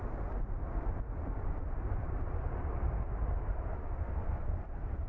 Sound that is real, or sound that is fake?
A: fake